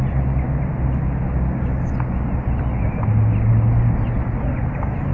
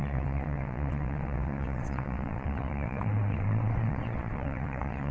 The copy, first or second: second